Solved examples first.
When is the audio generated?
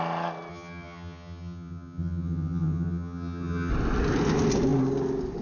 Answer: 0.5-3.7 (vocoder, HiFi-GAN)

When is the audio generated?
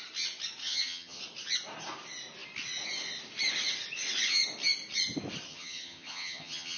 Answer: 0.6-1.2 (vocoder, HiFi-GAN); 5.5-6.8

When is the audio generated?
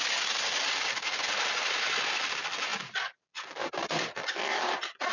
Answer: none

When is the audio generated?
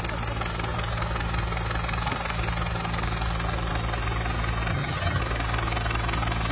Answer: 4.7-5.2 (vocoder, HiFi-GAN)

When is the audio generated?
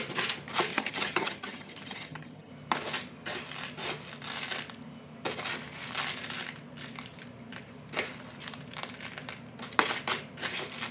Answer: 0.7-2.5 (vocoder, HiFi-GAN)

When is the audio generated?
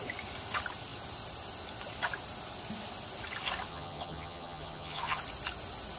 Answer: 3.7-5.2 (vocoder, HiFi-GAN)